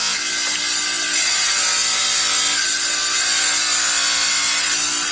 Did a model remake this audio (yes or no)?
no